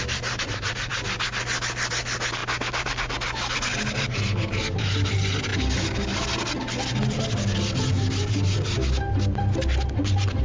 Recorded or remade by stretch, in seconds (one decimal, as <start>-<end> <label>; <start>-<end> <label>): 0.0-10.4 recorded

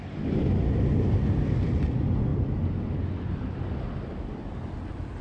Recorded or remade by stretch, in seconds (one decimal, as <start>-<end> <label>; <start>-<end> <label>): 0.0-5.2 recorded